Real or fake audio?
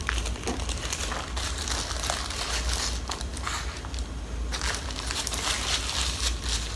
real